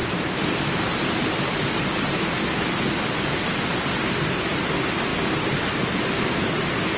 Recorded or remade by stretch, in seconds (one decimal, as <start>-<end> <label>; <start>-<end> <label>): 0.0-7.0 recorded